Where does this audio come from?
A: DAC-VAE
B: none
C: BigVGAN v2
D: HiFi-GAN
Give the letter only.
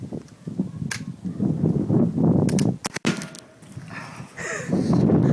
B